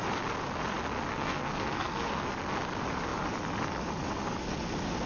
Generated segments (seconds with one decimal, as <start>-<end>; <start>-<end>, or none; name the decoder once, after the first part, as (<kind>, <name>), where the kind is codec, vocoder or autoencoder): 1.1-2.2 (codec, SNAC)